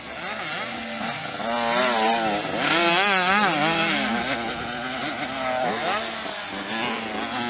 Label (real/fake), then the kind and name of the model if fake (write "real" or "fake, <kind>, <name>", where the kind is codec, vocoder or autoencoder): real